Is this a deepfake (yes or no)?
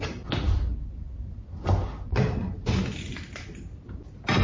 no